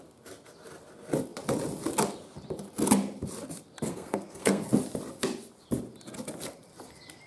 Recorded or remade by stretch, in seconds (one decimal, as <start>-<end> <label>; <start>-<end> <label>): 0.0-3.9 recorded; 3.9-4.6 remade; 4.6-7.3 recorded